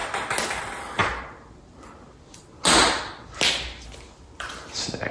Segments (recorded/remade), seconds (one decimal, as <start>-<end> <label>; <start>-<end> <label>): 0.0-5.1 recorded

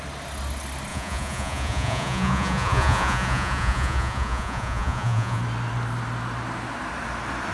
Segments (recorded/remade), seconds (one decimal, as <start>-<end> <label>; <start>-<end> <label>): 0.0-0.9 recorded; 0.9-5.4 remade; 5.4-7.5 recorded